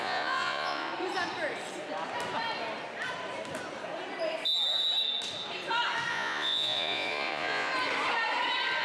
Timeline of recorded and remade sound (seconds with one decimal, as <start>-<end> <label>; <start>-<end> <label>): 0.0-0.9 remade; 0.9-6.1 recorded; 6.1-7.7 remade; 7.7-8.8 recorded